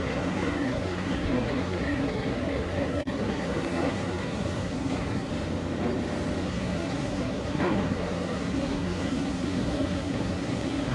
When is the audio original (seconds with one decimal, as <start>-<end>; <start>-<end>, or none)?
5.3-6.4